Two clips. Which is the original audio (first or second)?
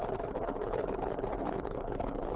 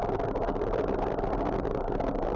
second